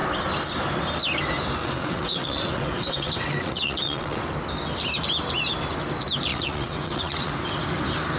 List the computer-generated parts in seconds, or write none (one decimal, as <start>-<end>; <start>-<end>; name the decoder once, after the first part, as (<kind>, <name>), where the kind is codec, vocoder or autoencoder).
1.6-4.2 (vocoder, WaveNeXt); 6.3-7.3